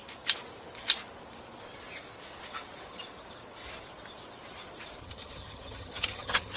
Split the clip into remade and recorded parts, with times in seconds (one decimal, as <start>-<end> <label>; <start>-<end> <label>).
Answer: 0.0-5.0 recorded; 5.0-6.6 remade